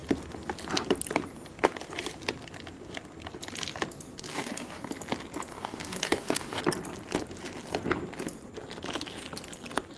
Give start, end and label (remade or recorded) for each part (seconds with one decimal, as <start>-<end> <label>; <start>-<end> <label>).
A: 0.0-4.3 recorded; 4.3-4.9 remade; 4.9-5.5 recorded; 5.5-6.6 remade; 6.6-10.0 recorded